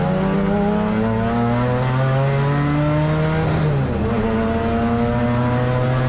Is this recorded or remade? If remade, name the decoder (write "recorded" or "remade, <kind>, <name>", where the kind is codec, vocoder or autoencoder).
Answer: recorded